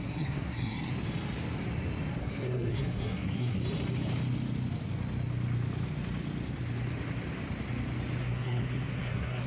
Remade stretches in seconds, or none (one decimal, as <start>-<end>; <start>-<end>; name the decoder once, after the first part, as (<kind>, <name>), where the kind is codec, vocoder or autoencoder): 0.0-0.9 (codec, SNAC); 2.2-3.6; 8.2-9.5